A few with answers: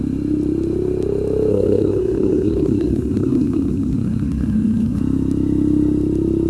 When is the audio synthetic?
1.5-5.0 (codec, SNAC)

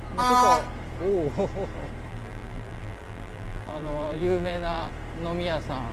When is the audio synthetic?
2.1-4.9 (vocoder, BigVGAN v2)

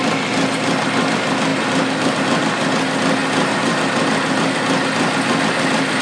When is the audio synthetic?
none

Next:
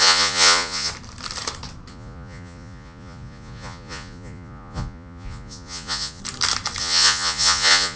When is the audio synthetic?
0.0-0.9 (vocoder, Vocos); 1.9-6.2; 6.8-8.0